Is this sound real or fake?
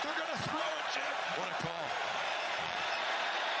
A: fake